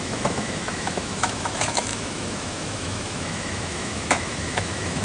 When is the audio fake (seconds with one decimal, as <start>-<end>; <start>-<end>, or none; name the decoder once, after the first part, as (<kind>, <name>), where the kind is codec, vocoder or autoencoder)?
0.0-5.0 (autoencoder, DAC-VAE)